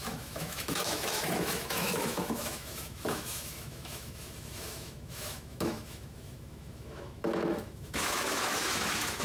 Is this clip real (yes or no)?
no